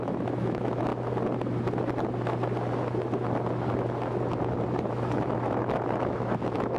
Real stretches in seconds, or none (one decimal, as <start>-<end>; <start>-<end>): 0.9-4.9